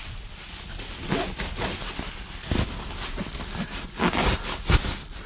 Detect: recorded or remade recorded